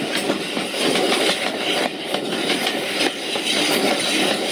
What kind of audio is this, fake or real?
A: real